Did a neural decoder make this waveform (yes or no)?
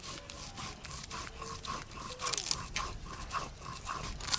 no